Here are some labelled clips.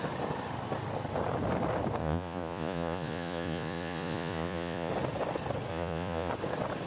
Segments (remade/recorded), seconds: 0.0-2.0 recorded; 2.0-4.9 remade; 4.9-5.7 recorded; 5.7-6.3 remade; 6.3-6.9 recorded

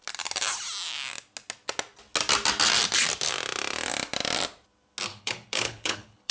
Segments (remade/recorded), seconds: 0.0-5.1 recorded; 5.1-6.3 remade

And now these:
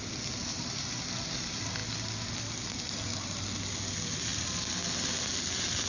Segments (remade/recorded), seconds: 0.0-5.9 recorded

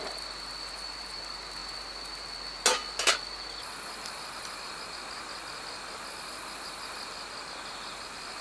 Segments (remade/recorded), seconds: 0.0-8.4 recorded

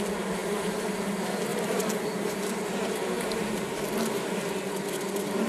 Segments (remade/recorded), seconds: 0.0-0.4 recorded; 0.4-1.1 remade; 1.1-1.5 recorded; 1.5-4.4 remade; 4.4-5.5 recorded

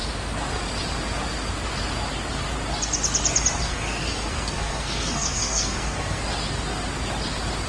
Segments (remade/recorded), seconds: 0.0-3.6 recorded; 3.6-6.2 remade; 6.2-7.7 recorded

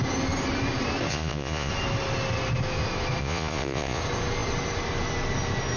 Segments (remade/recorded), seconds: 0.0-1.1 recorded; 1.1-1.7 remade; 1.7-3.2 recorded; 3.2-4.0 remade; 4.0-5.8 recorded